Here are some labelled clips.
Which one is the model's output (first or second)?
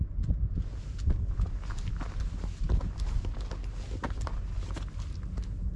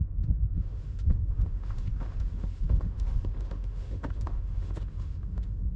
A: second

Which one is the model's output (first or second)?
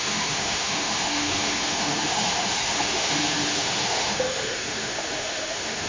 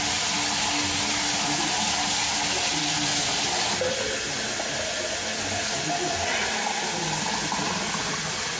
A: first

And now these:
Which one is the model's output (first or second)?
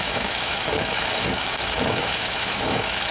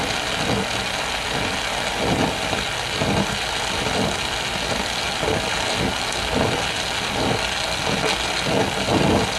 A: first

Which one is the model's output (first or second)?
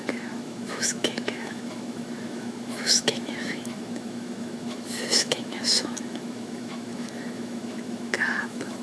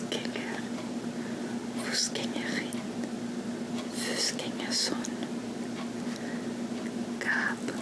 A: first